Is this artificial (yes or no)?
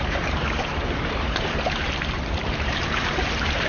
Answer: yes